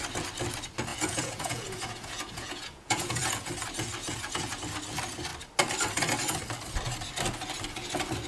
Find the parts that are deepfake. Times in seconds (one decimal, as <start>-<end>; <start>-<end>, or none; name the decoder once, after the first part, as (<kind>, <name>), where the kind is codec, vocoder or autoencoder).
0.9-3.5 (vocoder, Vocos); 4.0-4.6